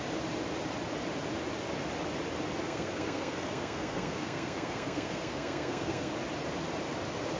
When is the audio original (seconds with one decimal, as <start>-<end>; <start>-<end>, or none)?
0.0-2.6; 6.1-7.4